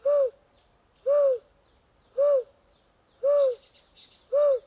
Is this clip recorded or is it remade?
recorded